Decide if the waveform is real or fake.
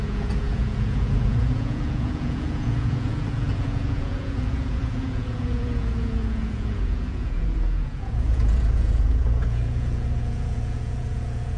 fake